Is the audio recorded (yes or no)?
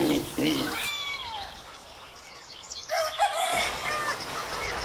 no